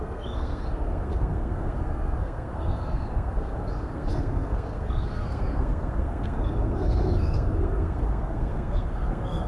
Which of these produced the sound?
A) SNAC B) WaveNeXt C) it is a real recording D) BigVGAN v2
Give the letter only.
A